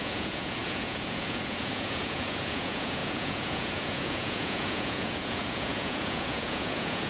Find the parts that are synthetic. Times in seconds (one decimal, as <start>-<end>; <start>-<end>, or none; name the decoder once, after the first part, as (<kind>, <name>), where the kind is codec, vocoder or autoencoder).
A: 0.0-7.1 (vocoder, Vocos)